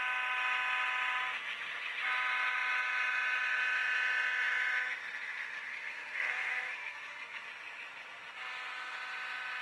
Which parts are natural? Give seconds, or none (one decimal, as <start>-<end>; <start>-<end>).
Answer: 0.0-5.7; 7.4-9.6